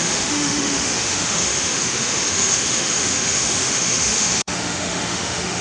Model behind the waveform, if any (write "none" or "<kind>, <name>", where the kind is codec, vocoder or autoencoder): autoencoder, DAC-VAE